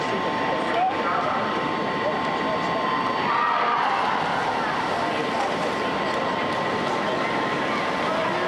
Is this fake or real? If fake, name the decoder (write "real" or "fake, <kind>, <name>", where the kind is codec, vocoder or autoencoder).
real